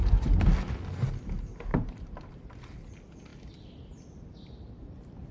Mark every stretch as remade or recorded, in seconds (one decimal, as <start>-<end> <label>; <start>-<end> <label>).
0.0-1.7 recorded; 1.7-2.4 remade; 2.4-5.3 recorded